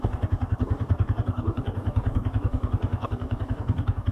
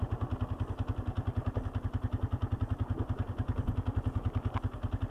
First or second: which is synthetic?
first